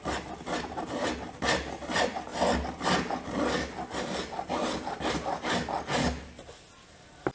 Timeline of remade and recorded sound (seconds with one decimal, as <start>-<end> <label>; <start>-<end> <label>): 0.0-7.3 recorded